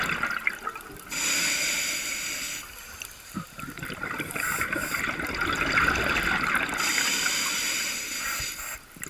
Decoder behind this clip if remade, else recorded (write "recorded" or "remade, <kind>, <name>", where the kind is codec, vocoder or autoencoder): recorded